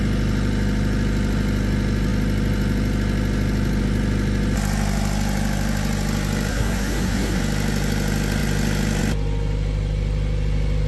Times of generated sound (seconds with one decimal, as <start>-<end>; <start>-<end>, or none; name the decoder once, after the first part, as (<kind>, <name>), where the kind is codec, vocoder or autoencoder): 6.5-7.4 (codec, SNAC)